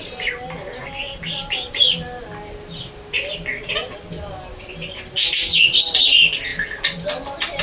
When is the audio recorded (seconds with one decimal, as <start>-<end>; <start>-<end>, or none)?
0.0-7.6